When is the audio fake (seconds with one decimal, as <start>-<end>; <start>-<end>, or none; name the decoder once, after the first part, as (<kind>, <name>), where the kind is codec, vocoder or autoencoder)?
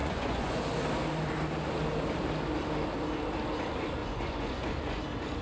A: 0.0-0.6 (vocoder, Vocos); 4.0-5.0